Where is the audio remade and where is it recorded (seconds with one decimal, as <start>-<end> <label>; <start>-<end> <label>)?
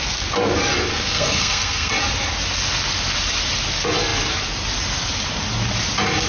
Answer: 0.0-0.9 recorded; 0.9-1.9 remade; 1.9-6.3 recorded